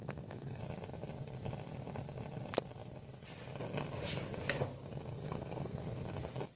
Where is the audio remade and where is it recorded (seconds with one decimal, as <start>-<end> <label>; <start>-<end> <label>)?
0.0-0.6 remade; 0.6-5.1 recorded; 5.1-5.8 remade; 5.8-6.6 recorded